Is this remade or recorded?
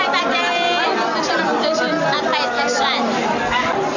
recorded